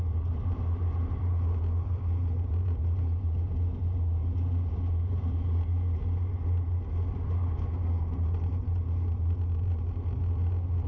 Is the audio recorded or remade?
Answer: recorded